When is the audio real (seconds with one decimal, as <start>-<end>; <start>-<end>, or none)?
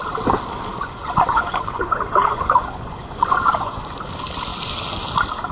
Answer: 0.0-0.7; 4.0-5.5